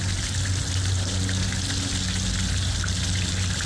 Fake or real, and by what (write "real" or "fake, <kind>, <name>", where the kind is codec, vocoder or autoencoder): real